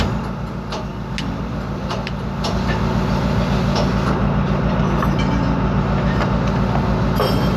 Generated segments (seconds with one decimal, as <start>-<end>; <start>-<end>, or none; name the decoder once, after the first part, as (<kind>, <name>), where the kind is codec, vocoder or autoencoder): none